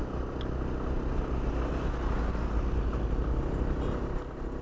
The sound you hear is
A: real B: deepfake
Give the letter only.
A